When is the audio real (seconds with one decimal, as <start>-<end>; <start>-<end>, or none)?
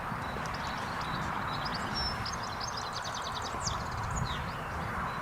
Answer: 1.7-3.5